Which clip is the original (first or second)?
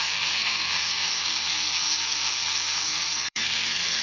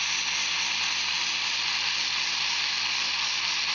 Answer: second